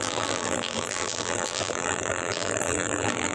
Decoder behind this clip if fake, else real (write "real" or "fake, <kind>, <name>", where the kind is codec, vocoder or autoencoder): fake, vocoder, BigVGAN v2